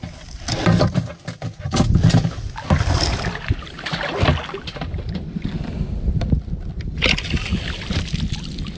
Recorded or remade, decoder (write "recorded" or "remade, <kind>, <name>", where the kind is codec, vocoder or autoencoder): recorded